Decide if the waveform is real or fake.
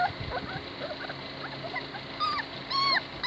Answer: fake